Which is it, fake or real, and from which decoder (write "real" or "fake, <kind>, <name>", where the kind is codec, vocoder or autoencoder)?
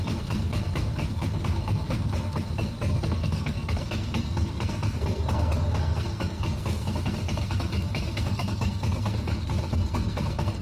fake, codec, SNAC